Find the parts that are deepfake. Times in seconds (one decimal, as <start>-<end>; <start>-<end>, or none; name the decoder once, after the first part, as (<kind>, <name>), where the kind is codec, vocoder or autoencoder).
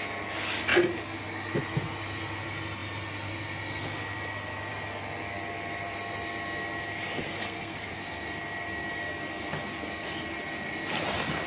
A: 7.2-7.8 (codec, SNAC)